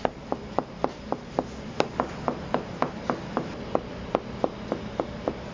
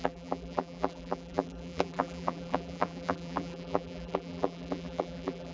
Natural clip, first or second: first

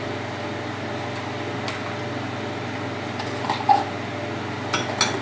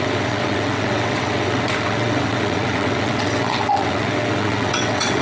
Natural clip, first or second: first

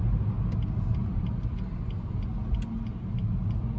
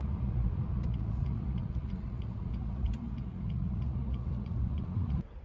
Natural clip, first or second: first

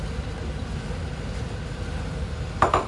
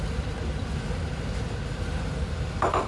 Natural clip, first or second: first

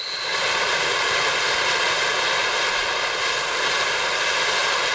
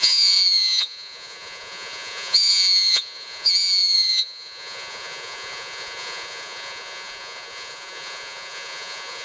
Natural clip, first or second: first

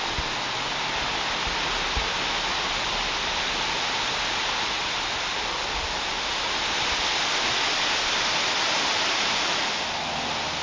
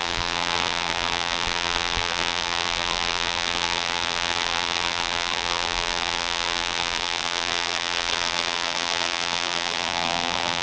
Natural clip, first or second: first